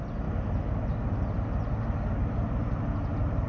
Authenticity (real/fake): real